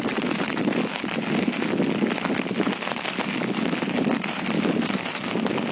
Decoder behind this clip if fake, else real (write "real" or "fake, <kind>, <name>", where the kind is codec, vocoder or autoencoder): real